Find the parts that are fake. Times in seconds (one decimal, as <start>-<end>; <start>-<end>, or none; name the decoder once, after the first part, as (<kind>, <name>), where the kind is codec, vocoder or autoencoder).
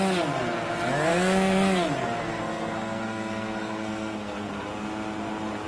1.1-4.5 (codec, SNAC)